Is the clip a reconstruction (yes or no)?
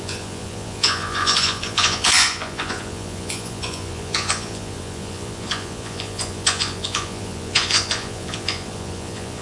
yes